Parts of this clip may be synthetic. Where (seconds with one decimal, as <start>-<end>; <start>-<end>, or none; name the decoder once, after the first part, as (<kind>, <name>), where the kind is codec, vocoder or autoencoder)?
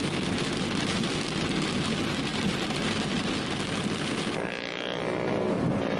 none